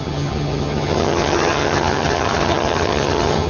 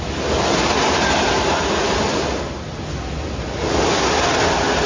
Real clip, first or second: second